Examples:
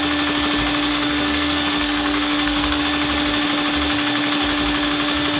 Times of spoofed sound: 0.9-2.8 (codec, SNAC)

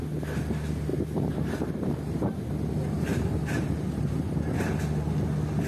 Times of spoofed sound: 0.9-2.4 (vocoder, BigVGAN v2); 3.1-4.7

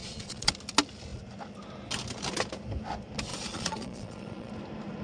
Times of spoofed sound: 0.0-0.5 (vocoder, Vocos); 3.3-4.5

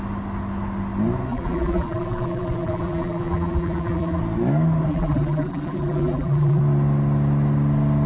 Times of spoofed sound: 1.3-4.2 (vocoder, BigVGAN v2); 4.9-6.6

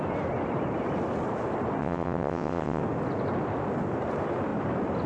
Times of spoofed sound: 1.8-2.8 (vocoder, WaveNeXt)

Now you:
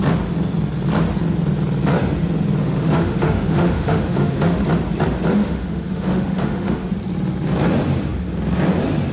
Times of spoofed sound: 2.6-4.6 (autoencoder, DAC-VAE); 5.4-6.9

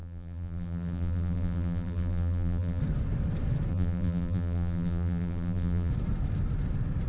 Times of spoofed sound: 0.0-2.8 (vocoder, BigVGAN v2); 3.7-5.9

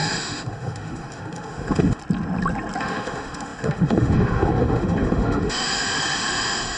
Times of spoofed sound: 0.0-2.0 (autoencoder, DAC-VAE); 2.8-6.8